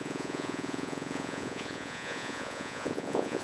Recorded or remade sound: remade